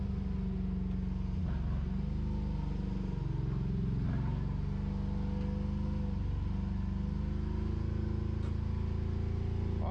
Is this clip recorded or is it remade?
recorded